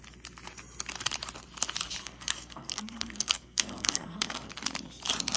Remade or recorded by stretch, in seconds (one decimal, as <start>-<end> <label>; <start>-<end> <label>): 0.0-2.0 recorded; 2.0-4.5 remade; 4.5-5.4 recorded